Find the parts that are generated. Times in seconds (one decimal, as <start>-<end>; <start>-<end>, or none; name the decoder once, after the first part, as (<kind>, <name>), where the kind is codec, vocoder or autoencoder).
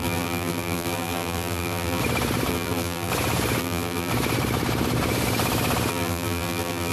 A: 0.0-2.0 (vocoder, BigVGAN v2); 2.5-3.1; 3.6-4.1; 5.9-6.9